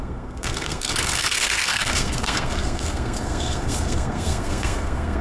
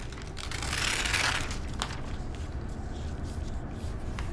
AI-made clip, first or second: first